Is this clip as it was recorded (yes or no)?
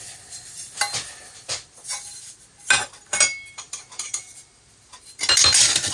yes